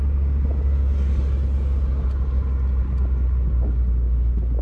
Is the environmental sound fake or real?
real